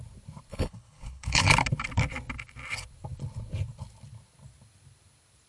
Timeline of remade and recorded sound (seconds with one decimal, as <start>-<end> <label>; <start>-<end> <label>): 0.0-0.5 recorded; 0.5-1.5 remade; 1.5-5.5 recorded